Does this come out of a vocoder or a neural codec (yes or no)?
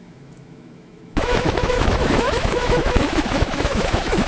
yes